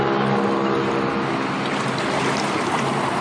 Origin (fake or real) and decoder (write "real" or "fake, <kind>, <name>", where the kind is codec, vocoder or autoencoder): real